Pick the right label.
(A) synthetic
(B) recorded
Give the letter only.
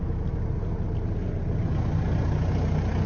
B